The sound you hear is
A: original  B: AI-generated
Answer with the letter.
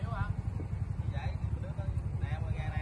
A